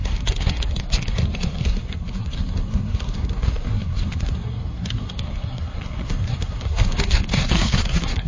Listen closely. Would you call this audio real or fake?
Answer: fake